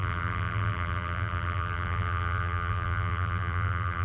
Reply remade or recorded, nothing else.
remade